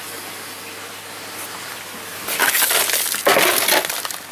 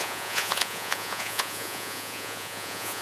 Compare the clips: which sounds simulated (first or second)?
second